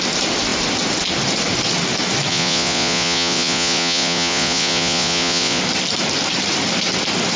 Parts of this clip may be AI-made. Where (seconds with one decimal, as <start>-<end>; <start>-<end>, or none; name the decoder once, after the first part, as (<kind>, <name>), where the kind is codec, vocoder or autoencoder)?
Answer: 2.3-5.6 (vocoder, Vocos)